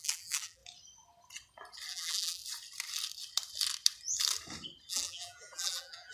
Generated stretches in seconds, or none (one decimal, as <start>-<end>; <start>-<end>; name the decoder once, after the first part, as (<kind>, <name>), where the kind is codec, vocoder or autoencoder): 0.0-0.6 (vocoder, BigVGAN v2); 1.9-2.4; 4.9-6.1